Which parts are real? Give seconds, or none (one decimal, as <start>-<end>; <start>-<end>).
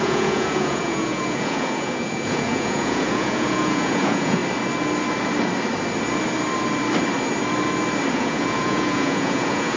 4.4-8.1